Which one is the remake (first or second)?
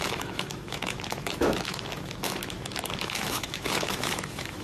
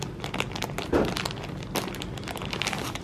first